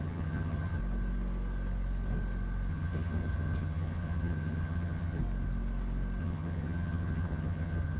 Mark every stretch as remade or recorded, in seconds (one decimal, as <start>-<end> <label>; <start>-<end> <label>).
0.0-0.8 remade; 0.8-2.7 recorded; 2.7-5.2 remade; 5.2-6.2 recorded; 6.2-8.0 remade